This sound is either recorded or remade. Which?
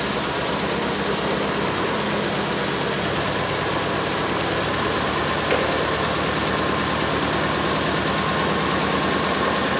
recorded